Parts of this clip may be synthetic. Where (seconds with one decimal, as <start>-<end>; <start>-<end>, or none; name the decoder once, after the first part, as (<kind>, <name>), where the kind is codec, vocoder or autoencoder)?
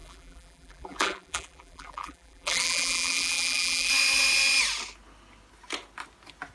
0.0-3.9 (vocoder, BigVGAN v2)